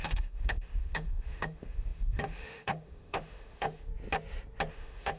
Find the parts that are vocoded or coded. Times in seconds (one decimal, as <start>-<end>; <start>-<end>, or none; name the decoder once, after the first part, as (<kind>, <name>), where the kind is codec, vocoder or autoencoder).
0.0-3.9 (autoencoder, DAC-VAE); 4.7-5.2